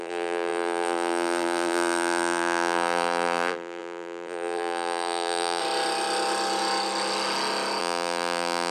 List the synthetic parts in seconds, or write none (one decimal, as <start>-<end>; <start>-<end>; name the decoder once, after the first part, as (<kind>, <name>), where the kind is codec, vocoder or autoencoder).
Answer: 0.0-5.6 (vocoder, BigVGAN v2); 7.8-8.7